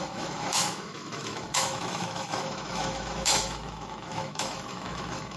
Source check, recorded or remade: remade